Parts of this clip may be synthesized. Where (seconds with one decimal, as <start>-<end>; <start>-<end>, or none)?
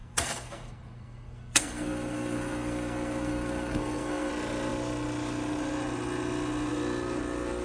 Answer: 0.0-4.3